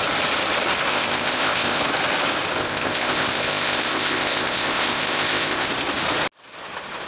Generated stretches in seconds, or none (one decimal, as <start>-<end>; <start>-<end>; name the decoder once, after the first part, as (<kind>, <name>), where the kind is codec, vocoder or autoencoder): 0.9-1.8 (codec, ZipCodec); 2.6-5.7